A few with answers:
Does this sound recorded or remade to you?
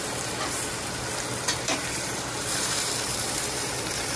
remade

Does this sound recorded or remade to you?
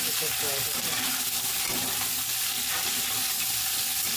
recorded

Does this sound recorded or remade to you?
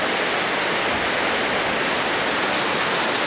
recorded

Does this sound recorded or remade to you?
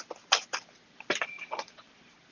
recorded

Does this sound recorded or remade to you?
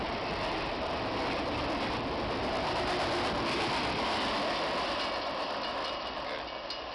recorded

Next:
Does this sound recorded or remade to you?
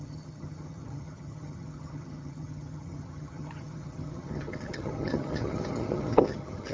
remade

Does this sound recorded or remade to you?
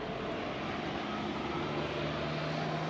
recorded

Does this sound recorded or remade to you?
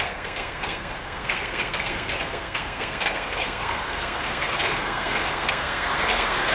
remade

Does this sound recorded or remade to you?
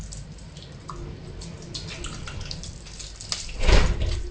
recorded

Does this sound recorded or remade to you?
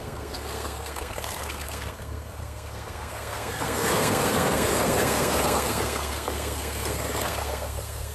remade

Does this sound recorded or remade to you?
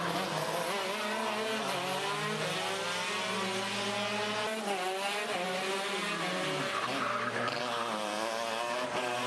recorded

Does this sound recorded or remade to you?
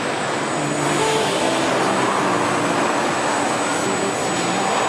recorded